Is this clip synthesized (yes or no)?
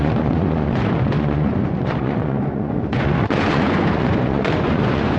yes